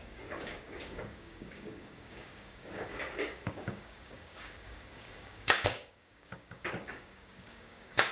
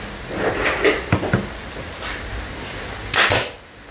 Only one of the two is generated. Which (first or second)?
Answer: first